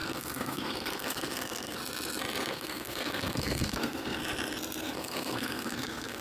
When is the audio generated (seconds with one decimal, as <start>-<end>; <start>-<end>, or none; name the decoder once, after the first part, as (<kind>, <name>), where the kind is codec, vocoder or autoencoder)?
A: 0.0-1.8 (codec, SNAC); 2.5-4.2; 4.8-6.2